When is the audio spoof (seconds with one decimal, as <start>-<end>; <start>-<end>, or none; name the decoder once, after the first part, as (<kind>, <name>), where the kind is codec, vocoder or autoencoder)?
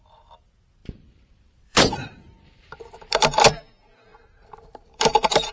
0.8-3.4 (vocoder, BigVGAN v2); 4.1-5.5